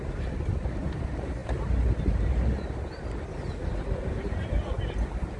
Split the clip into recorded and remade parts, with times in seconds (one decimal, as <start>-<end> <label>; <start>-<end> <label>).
0.0-5.4 recorded